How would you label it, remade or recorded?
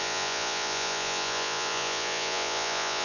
remade